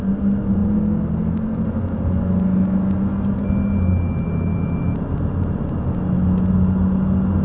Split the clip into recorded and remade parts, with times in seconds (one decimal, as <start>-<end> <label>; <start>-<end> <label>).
0.0-7.4 recorded